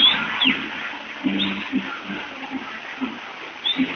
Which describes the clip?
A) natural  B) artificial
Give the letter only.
A